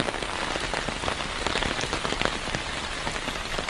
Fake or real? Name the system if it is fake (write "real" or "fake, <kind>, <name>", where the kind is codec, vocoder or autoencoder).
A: real